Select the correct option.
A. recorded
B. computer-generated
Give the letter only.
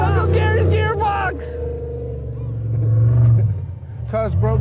A